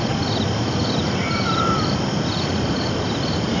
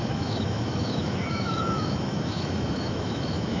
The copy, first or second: second